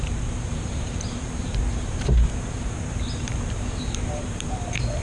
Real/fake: fake